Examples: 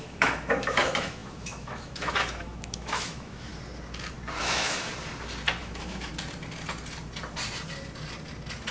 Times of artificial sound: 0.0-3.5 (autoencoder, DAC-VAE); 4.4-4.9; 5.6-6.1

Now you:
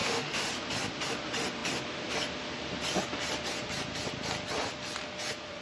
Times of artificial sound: 0.0-0.5 (autoencoder, DAC-VAE)

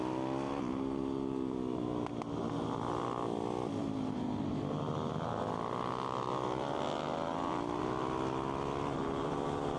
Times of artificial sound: none

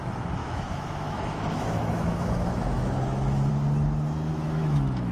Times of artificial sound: 0.4-3.5 (autoencoder, DAC-VAE); 4.3-5.1